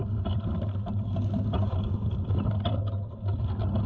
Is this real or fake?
real